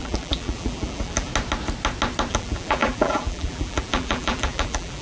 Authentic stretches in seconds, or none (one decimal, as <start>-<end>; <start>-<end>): 1.3-2.3